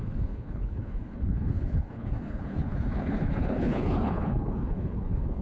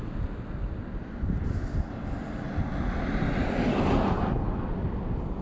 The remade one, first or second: first